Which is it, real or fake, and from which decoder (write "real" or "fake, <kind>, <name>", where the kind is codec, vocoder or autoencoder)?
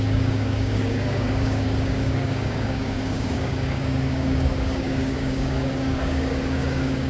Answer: fake, codec, DAC